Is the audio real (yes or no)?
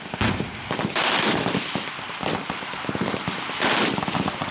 yes